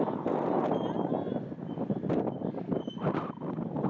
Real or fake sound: real